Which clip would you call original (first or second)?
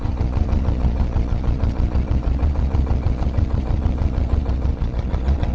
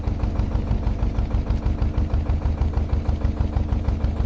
second